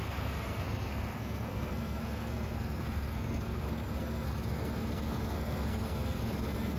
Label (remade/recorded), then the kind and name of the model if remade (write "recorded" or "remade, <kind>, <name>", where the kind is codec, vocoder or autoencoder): remade, codec, SNAC